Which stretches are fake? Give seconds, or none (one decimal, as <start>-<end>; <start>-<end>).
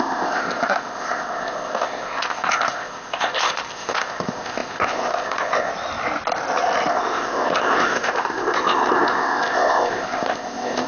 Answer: 0.0-5.7; 6.9-10.9